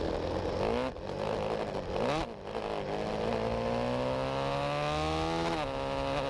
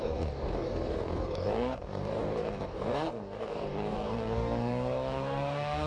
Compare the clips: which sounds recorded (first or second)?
first